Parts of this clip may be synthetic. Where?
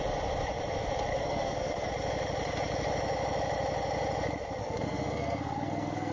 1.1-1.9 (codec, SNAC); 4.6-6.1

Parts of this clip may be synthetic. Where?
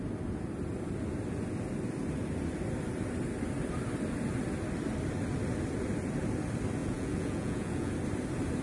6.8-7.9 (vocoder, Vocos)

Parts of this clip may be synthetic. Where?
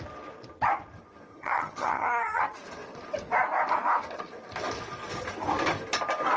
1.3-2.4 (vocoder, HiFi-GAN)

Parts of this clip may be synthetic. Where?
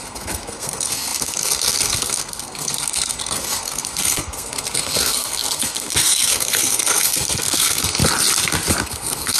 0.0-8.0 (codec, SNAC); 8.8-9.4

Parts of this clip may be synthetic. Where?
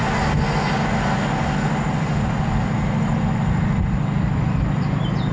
none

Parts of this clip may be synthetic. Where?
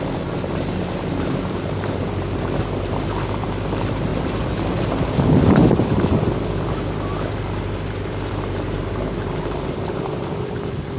0.0-4.1 (vocoder, BigVGAN v2); 8.3-11.0